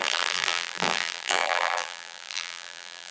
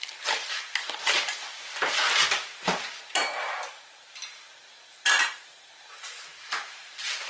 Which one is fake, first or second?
first